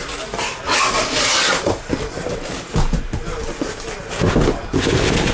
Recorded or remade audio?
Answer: recorded